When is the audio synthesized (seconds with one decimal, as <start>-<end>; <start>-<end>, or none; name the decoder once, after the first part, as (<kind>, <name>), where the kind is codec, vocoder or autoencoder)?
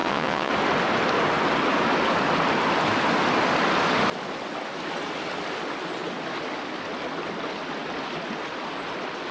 0.0-0.5 (vocoder, WaveNeXt)